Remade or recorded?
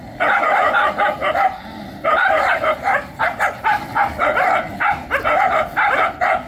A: recorded